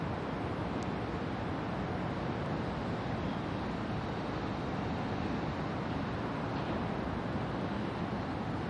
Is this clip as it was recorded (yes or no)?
yes